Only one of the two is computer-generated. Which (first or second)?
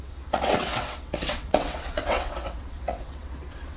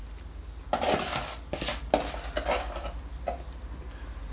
first